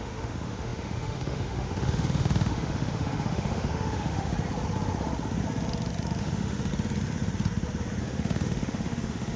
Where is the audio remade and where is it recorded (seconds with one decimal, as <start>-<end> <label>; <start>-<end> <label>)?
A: 0.0-4.3 remade; 4.3-6.2 recorded; 6.2-6.7 remade; 6.7-8.0 recorded; 8.0-9.4 remade